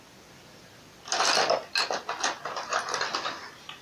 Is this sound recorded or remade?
recorded